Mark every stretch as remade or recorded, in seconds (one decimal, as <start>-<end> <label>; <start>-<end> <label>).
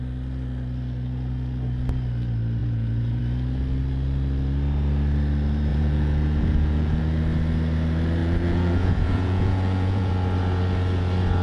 0.0-2.6 recorded; 2.6-3.2 remade; 3.2-5.7 recorded; 5.7-7.0 remade; 7.0-8.2 recorded; 8.2-10.1 remade; 10.1-11.4 recorded